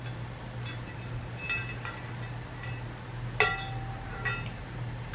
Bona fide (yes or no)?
yes